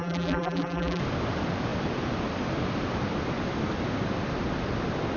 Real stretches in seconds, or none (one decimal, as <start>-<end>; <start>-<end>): 1.0-5.2